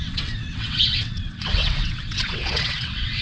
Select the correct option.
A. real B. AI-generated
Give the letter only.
B